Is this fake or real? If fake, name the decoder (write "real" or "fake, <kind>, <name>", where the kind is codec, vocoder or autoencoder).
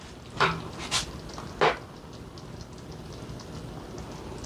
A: real